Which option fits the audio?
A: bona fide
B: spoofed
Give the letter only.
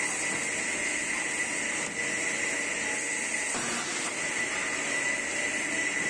A